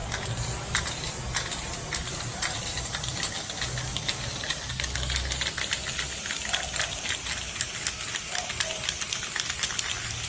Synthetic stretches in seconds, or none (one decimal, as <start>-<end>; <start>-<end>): 0.0-3.3; 3.9-4.6